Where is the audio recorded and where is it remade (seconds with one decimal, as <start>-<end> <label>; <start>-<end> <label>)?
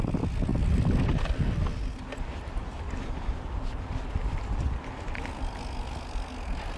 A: 0.0-6.8 recorded